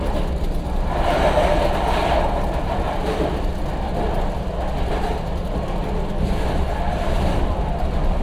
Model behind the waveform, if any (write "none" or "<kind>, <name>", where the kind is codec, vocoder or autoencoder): none